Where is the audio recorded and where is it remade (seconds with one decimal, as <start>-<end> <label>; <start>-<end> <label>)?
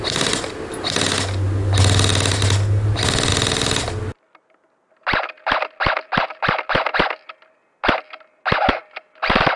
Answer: 0.0-9.6 recorded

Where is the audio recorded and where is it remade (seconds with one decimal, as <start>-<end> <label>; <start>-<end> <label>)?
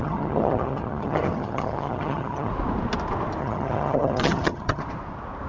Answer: 0.0-2.5 remade; 2.5-3.4 recorded; 3.4-4.8 remade; 4.8-5.5 recorded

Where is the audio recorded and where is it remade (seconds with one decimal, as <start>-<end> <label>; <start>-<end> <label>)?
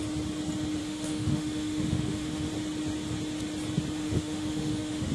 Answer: 0.0-0.8 recorded; 0.8-2.5 remade; 2.5-4.0 recorded; 4.0-5.1 remade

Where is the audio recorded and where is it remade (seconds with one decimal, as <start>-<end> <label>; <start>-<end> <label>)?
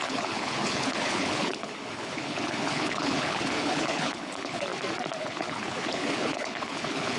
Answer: 0.0-4.7 remade; 4.7-5.2 recorded; 5.2-7.2 remade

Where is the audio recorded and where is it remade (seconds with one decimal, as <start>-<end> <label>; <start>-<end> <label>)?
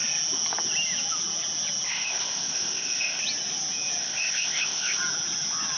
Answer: 0.0-1.9 recorded; 1.9-3.2 remade; 3.2-4.0 recorded; 4.0-5.0 remade; 5.0-5.8 recorded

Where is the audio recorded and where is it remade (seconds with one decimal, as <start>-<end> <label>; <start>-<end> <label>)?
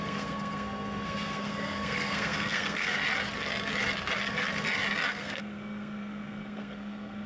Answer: 0.0-3.0 remade; 3.0-5.1 recorded; 5.1-7.3 remade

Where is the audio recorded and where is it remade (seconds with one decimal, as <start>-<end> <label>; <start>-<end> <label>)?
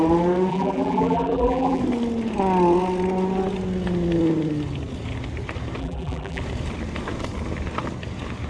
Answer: 0.0-0.5 recorded; 0.5-1.8 remade; 1.8-5.8 recorded; 5.8-6.4 remade; 6.4-8.5 recorded